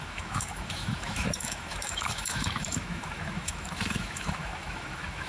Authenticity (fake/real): fake